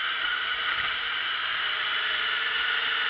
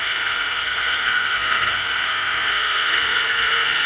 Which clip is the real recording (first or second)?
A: first